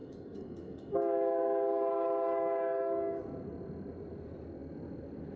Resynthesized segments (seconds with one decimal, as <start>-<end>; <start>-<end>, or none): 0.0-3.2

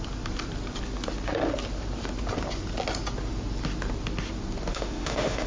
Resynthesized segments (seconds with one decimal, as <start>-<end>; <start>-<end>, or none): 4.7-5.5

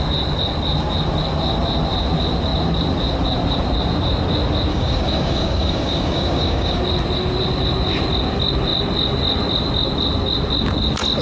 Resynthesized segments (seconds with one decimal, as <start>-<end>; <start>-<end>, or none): 4.7-6.8

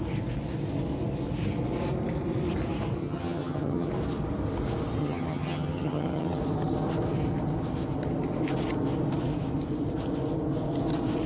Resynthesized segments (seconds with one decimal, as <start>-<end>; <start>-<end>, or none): 3.0-3.9; 5.0-6.4

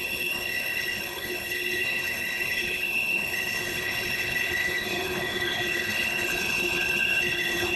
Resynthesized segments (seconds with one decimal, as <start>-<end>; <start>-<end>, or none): 0.0-7.8